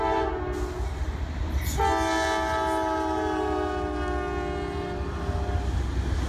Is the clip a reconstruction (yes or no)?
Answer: no